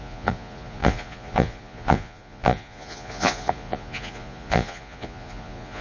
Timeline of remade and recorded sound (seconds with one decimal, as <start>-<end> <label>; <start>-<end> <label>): 0.0-5.8 remade